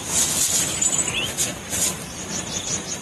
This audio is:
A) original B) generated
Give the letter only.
B